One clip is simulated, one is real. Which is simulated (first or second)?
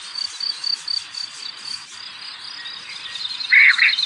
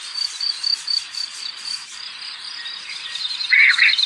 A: second